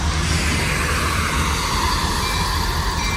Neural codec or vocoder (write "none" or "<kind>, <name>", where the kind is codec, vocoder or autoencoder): vocoder, BigVGAN v2